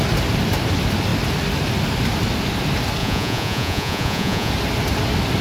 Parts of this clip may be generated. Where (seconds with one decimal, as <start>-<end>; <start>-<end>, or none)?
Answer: 3.0-4.5